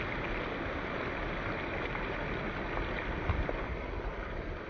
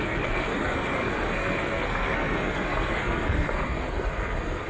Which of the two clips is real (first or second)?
first